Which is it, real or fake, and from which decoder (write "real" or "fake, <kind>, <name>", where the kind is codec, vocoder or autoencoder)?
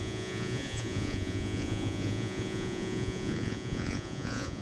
fake, vocoder, Vocos